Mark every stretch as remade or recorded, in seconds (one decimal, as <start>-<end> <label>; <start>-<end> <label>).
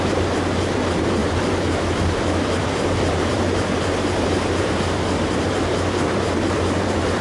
0.0-7.2 remade